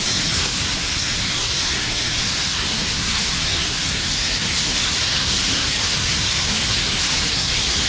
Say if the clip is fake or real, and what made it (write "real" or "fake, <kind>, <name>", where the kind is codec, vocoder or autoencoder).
fake, codec, SNAC